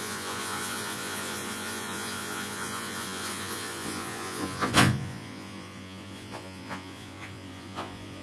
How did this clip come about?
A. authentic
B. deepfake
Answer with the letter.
B